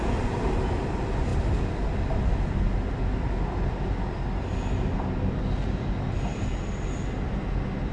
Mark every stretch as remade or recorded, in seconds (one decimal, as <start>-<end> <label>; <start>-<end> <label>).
0.0-7.9 recorded